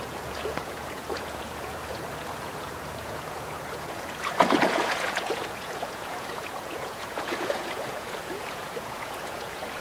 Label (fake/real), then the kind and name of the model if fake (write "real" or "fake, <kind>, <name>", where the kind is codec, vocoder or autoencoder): fake, vocoder, Vocos